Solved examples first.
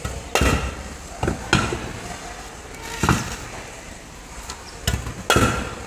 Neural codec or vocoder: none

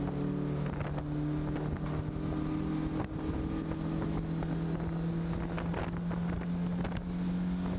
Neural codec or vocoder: none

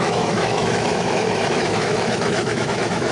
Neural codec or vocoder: autoencoder, DAC-VAE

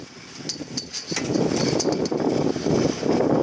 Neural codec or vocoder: none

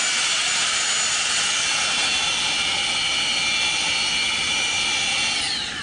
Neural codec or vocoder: none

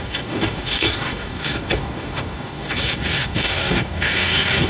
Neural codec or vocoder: codec, DAC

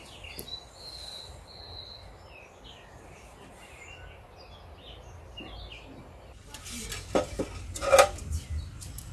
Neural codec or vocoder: none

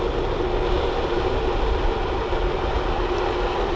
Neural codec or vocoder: none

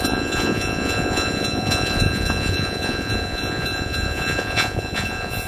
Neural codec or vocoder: vocoder, Vocos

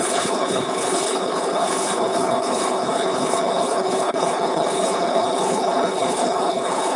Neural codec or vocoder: codec, HILCodec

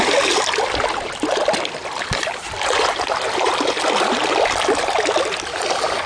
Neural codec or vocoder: none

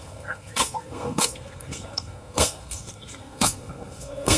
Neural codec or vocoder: codec, SNAC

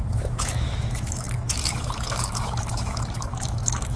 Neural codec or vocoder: autoencoder, DAC-VAE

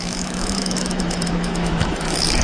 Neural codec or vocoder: autoencoder, DAC-VAE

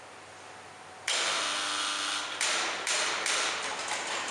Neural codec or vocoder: none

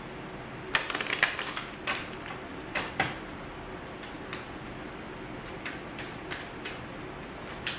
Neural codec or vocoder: none